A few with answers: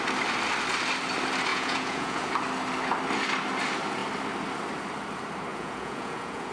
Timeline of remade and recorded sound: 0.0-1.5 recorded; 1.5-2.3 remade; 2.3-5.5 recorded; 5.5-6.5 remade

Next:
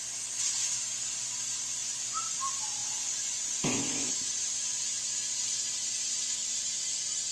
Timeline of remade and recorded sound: 0.0-1.8 recorded; 1.8-2.3 remade; 2.3-2.8 recorded; 2.8-4.1 remade; 4.1-7.3 recorded

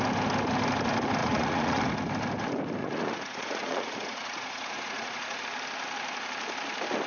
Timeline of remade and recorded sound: 0.0-1.2 recorded; 1.2-1.8 remade; 1.8-2.8 recorded; 2.8-5.4 remade; 5.4-7.1 recorded